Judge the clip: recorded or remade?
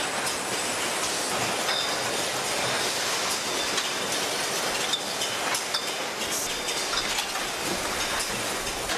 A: recorded